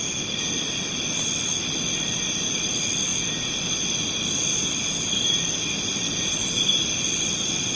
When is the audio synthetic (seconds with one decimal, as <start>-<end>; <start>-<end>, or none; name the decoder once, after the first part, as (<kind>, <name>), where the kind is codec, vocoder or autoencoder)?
none